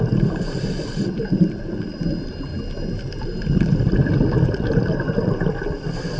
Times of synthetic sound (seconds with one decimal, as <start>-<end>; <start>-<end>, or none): 0.0-2.5; 3.2-6.2

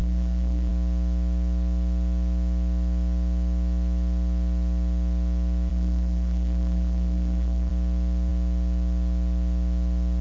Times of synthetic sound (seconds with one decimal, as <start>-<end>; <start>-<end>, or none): 0.0-0.7; 5.7-7.7

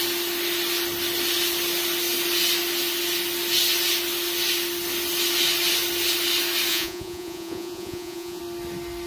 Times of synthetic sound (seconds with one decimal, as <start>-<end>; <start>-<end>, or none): 6.7-8.4

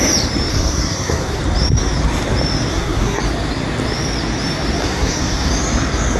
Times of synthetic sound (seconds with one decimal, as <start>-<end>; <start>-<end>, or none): 0.5-1.4; 2.7-3.2; 4.8-5.5

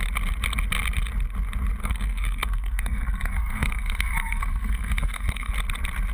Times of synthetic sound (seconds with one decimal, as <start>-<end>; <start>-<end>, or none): 1.8-5.5

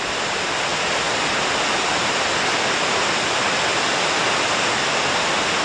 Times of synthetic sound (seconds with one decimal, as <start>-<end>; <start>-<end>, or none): none

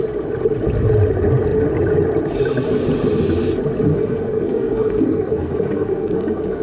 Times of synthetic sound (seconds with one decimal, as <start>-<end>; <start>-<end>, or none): 3.9-6.6

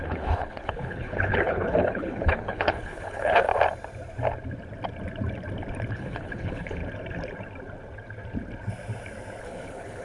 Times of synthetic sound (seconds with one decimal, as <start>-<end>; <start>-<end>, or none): 0.0-3.5; 5.9-6.8; 9.4-10.0